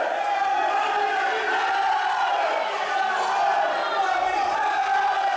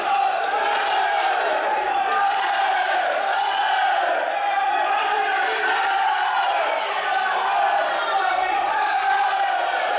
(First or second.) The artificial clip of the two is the second